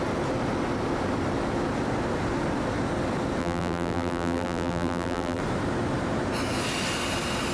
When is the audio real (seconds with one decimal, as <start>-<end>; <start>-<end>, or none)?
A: 0.0-3.4; 5.4-7.5